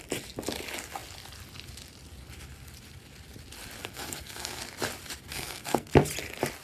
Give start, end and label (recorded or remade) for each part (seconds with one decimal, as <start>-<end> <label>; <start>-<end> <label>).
0.0-3.8 recorded; 3.8-4.6 remade; 4.6-5.3 recorded; 5.3-5.9 remade; 5.9-6.6 recorded